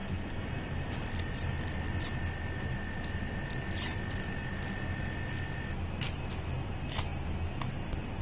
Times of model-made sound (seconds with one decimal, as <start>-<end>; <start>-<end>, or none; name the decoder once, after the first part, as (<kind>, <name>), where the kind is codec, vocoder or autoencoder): none